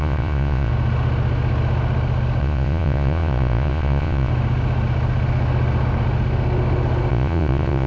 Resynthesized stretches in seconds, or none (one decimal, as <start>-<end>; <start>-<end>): 0.0-0.7; 2.4-4.3; 7.1-7.9